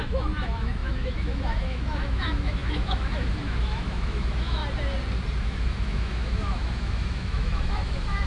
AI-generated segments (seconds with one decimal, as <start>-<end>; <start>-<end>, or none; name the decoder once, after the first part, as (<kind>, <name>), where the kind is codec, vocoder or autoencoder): 0.0-4.6 (autoencoder, DAC-VAE); 5.4-8.3